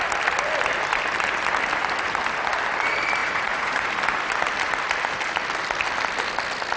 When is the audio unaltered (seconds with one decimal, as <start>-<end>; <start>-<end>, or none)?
0.0-3.2; 3.9-6.8